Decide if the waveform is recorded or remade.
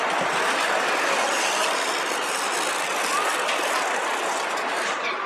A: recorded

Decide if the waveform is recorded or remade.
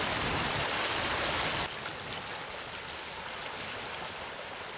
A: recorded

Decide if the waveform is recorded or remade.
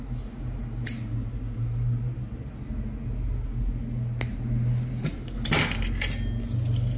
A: recorded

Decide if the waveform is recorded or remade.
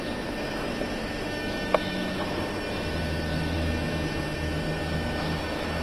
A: remade